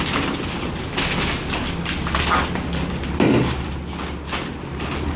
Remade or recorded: recorded